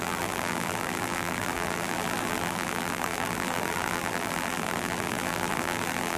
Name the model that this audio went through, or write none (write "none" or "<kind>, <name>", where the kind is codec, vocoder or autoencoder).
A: vocoder, BigVGAN v2